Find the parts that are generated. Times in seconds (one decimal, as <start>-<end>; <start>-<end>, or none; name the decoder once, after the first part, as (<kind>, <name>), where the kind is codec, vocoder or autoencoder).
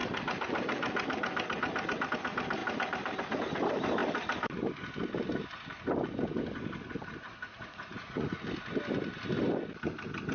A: 7.5-8.4 (vocoder, Vocos)